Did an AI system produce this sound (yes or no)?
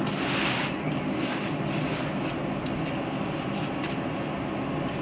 no